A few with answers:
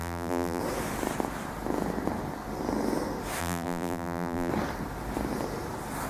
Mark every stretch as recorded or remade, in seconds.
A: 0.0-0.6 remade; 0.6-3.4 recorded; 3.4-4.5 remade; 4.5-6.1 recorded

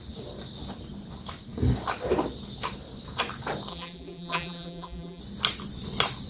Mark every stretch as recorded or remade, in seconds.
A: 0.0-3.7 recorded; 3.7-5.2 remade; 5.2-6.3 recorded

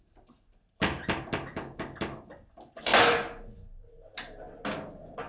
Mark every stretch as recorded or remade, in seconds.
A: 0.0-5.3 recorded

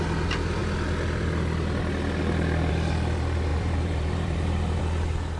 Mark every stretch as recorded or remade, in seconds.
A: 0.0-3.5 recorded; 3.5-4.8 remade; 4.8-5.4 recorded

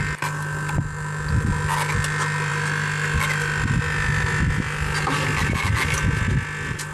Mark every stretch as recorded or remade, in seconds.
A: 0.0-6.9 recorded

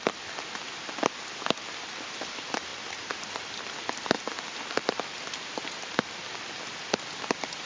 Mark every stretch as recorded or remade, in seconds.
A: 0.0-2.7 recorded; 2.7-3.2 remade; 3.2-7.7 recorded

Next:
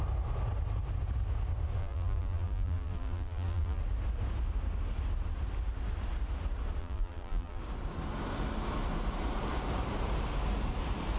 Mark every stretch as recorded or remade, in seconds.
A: 0.0-1.8 recorded; 1.8-3.8 remade; 3.8-6.8 recorded; 6.8-7.6 remade; 7.6-11.2 recorded